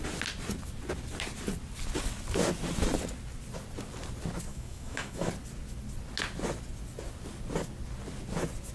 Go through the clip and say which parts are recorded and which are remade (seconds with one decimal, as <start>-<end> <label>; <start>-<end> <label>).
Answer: 0.0-4.5 recorded; 4.5-5.3 remade; 5.3-8.7 recorded